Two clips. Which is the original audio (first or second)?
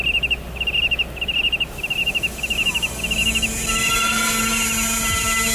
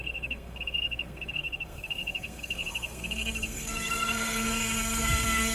first